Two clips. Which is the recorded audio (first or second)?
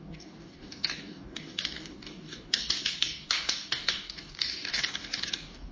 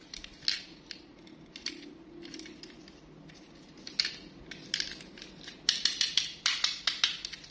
second